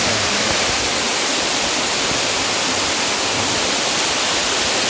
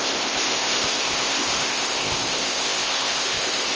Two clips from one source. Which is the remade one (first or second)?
second